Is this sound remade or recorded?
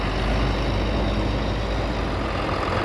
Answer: recorded